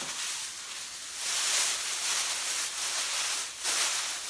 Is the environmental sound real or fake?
real